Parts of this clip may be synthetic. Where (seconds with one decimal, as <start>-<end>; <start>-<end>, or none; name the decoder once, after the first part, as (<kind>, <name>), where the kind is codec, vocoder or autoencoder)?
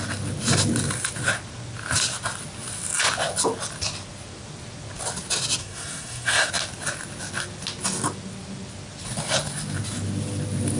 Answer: 5.6-6.5 (codec, SNAC)